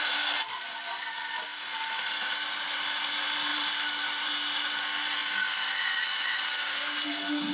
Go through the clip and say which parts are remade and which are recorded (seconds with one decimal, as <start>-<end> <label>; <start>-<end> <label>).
0.0-3.5 recorded; 3.5-4.3 remade; 4.3-7.5 recorded